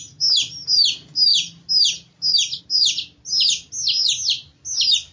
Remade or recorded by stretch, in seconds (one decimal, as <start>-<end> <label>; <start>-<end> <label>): 0.0-5.1 recorded